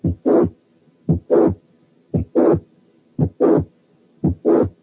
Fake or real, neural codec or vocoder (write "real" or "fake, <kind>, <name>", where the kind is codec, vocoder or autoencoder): real